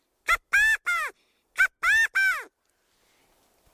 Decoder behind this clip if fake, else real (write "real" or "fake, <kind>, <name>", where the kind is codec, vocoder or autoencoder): real